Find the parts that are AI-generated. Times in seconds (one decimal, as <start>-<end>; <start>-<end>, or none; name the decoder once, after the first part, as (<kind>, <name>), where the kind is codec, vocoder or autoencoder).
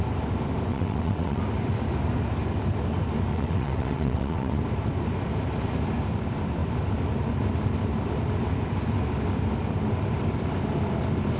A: 0.7-1.4 (vocoder, WaveNeXt); 3.3-4.6